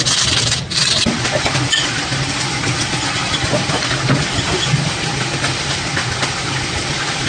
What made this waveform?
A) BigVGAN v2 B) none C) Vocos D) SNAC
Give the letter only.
A